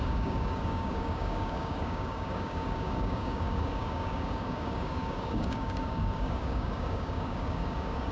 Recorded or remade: remade